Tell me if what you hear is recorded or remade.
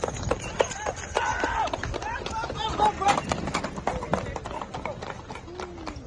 recorded